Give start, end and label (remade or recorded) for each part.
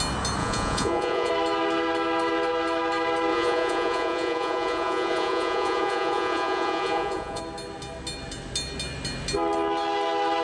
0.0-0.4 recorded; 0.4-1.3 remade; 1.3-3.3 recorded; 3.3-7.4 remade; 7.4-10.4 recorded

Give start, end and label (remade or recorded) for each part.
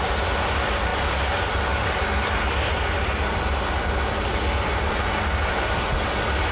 0.0-6.5 recorded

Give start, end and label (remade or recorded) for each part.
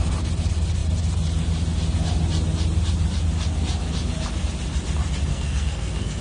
0.0-5.3 recorded; 5.3-6.2 remade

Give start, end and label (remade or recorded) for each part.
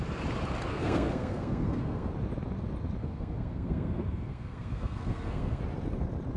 0.0-0.7 recorded; 0.7-2.1 remade; 2.1-3.0 recorded; 3.0-5.6 remade; 5.6-6.4 recorded